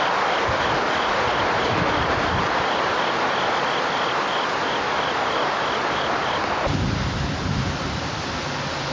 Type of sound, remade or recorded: recorded